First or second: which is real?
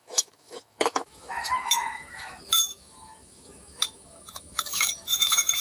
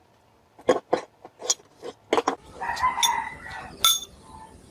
second